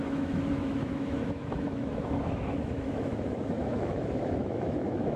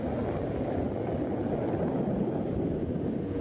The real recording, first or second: second